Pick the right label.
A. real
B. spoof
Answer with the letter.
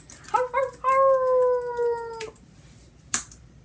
A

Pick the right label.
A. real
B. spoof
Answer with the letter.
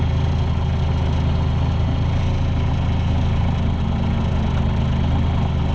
A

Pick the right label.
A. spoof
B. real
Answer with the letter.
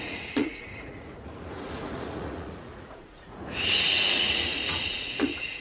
A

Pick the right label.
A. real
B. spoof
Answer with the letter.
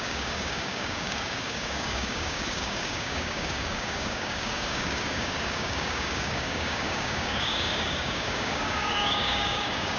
B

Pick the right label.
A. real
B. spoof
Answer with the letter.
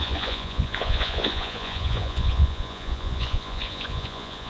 B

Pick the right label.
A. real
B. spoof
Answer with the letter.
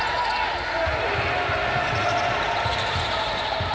A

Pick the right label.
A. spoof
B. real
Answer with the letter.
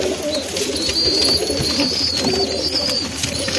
B